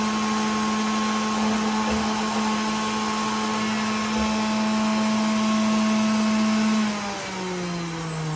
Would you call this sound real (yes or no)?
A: yes